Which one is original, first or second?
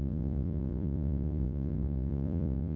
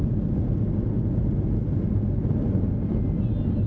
second